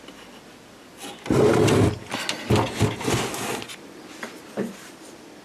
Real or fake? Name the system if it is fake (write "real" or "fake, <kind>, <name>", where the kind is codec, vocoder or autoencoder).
real